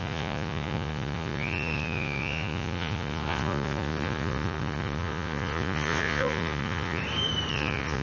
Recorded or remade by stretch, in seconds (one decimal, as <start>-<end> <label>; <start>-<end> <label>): 0.0-7.0 remade; 7.0-7.5 recorded; 7.5-8.0 remade